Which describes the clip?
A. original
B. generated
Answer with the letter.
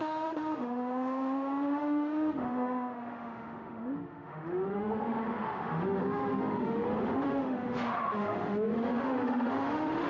B